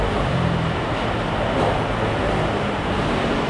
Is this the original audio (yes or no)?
yes